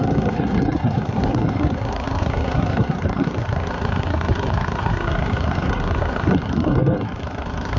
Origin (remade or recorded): remade